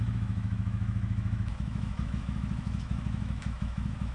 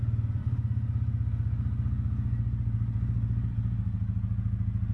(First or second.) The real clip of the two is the second